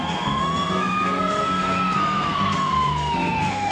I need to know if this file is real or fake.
fake